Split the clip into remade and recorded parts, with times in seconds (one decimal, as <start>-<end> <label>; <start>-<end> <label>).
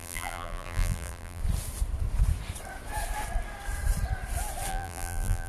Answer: 0.0-1.4 remade; 1.4-4.7 recorded; 4.7-5.5 remade